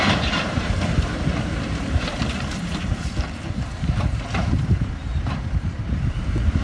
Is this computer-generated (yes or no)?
yes